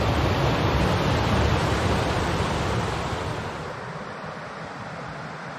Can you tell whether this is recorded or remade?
remade